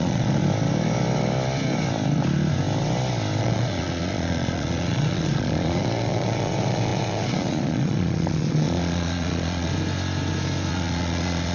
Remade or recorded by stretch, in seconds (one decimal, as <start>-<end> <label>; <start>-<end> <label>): 0.0-0.4 remade; 0.4-3.4 recorded; 3.4-9.7 remade; 9.7-10.7 recorded; 10.7-11.5 remade